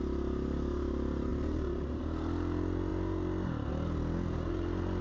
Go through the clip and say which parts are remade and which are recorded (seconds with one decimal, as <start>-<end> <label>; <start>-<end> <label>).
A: 0.0-1.3 recorded; 1.3-2.0 remade; 2.0-5.0 recorded